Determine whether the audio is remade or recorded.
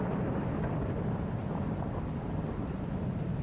recorded